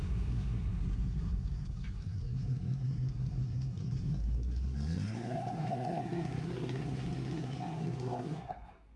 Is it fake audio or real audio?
fake